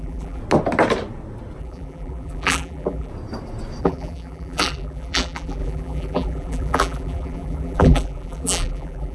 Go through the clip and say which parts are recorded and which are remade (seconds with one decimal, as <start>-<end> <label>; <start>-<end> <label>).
0.0-0.4 remade; 0.4-1.6 recorded; 1.6-3.1 remade; 3.1-3.8 recorded; 3.8-9.1 remade